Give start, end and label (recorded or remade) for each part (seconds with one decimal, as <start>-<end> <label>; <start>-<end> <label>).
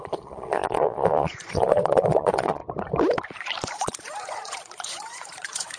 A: 0.0-2.6 remade; 2.6-3.7 recorded; 3.7-5.8 remade